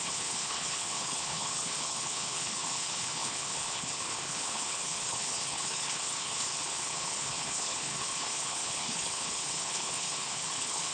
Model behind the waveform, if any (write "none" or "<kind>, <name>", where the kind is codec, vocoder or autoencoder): codec, HILCodec